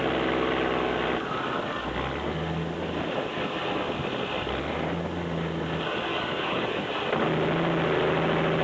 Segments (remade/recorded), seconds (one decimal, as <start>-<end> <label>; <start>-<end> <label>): 0.0-6.1 recorded; 6.1-6.9 remade; 6.9-8.6 recorded